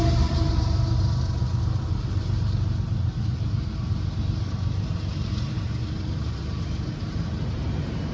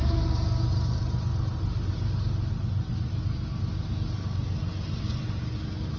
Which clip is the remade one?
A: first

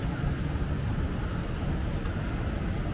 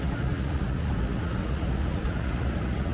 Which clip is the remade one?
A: second